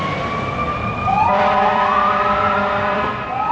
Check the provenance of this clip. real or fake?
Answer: fake